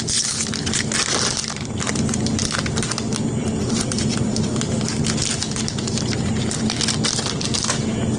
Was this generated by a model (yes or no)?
no